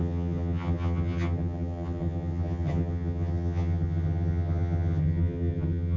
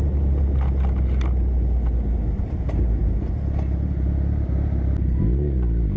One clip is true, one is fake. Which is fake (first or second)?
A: first